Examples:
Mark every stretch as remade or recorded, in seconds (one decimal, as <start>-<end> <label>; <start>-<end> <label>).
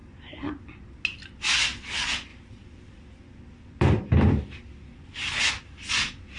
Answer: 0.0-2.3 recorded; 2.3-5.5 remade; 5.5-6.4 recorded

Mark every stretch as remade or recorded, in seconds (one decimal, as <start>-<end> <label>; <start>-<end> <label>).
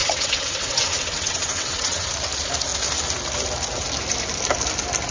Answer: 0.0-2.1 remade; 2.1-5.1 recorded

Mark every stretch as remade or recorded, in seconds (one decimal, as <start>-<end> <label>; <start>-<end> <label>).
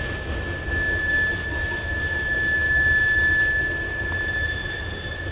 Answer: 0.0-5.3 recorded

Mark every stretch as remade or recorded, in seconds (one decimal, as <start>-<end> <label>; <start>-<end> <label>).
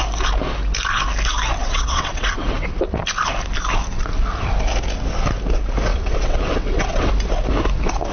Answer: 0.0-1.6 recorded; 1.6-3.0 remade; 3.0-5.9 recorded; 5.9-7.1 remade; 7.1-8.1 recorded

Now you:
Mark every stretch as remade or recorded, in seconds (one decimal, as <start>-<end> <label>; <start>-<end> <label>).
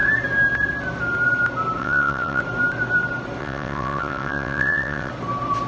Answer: 0.0-1.8 recorded; 1.8-2.4 remade; 2.4-3.4 recorded; 3.4-5.1 remade; 5.1-5.7 recorded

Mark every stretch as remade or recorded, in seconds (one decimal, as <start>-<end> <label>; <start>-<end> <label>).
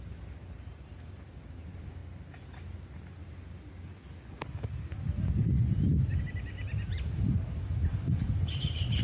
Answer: 0.0-2.0 remade; 2.0-6.2 recorded; 6.2-9.0 remade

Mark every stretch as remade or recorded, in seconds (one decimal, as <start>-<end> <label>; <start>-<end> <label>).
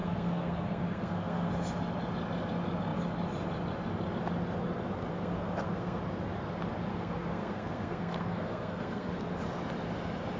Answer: 0.0-1.5 remade; 1.5-5.1 recorded; 5.1-6.0 remade; 6.0-6.9 recorded; 6.9-9.3 remade; 9.3-10.4 recorded